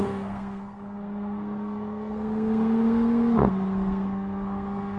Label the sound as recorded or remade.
remade